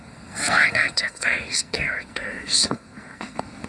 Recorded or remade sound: remade